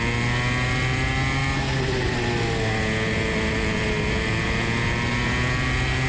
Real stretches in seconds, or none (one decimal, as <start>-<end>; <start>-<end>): 0.0-6.1